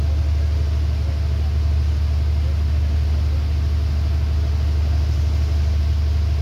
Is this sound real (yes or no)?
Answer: yes